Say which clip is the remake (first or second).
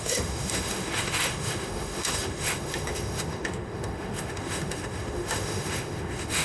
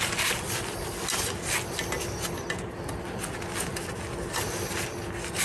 first